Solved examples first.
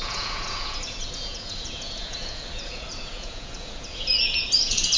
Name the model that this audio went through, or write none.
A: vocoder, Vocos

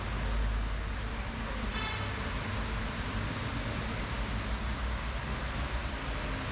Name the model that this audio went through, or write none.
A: none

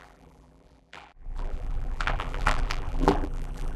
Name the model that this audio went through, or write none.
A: vocoder, BigVGAN v2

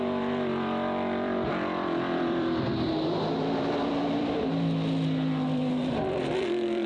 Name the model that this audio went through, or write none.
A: vocoder, BigVGAN v2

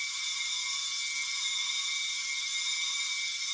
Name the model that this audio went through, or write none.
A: none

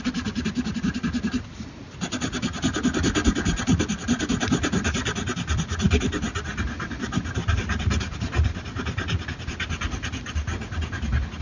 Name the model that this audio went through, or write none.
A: none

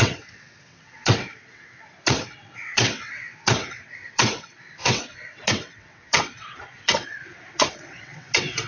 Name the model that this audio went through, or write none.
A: vocoder, WaveNeXt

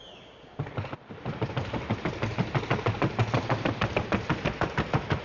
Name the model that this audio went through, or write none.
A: none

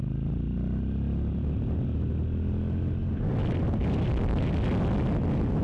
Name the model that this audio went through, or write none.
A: none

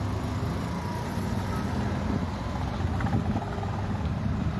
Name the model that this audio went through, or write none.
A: none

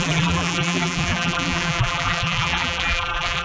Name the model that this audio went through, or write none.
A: vocoder, BigVGAN v2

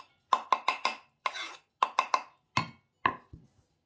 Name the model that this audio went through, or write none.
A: none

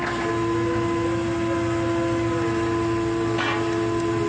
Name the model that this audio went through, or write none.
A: none